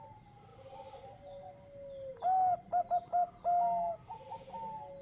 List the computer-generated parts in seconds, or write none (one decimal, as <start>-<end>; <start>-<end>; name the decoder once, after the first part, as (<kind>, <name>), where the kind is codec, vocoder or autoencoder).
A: 0.5-1.5 (vocoder, BigVGAN v2)